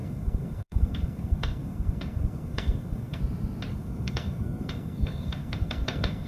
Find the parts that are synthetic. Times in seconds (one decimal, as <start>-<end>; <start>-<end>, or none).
0.0-3.2; 3.7-6.3